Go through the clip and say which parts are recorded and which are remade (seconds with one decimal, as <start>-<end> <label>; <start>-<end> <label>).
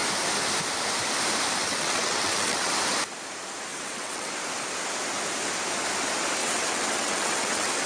0.0-1.6 recorded; 1.6-2.7 remade; 2.7-3.7 recorded; 3.7-4.3 remade; 4.3-6.4 recorded; 6.4-7.9 remade